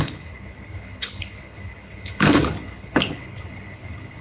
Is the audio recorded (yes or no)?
no